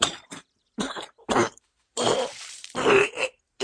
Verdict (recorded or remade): remade